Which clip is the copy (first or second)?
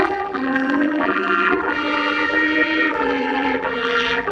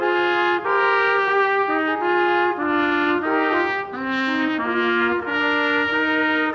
first